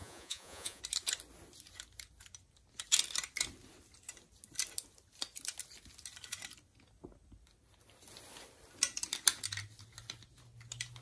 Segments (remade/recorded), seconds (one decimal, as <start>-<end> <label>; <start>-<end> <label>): 0.0-0.8 remade; 0.8-11.0 recorded